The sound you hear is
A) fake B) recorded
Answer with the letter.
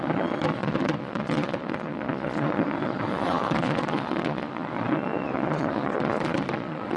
A